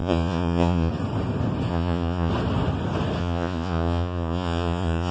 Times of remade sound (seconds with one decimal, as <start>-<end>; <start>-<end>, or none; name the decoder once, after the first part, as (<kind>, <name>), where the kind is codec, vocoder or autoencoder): 0.0-0.9 (vocoder, Vocos); 1.7-2.3; 3.2-5.1